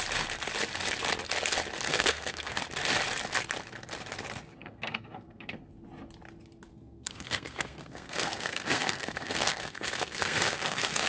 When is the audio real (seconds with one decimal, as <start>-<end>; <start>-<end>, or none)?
0.0-1.9; 2.6-4.6; 5.7-6.7